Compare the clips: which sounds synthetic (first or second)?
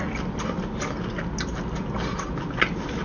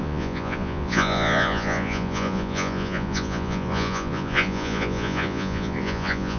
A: second